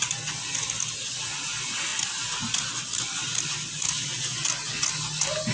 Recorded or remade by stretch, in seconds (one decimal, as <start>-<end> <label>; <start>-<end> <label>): 0.0-5.5 recorded